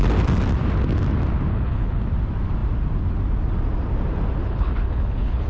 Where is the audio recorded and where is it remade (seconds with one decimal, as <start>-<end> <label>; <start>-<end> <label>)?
0.0-1.5 recorded; 1.5-2.0 remade; 2.0-4.4 recorded; 4.4-5.5 remade